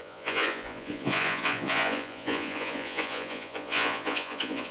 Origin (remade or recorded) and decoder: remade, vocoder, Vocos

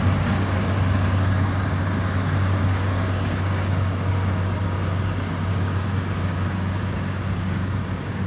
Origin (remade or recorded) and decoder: remade, codec, DAC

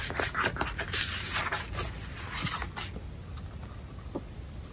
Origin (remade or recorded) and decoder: recorded